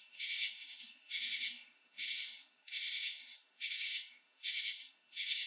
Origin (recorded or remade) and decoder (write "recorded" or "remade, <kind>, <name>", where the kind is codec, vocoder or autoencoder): remade, autoencoder, DAC-VAE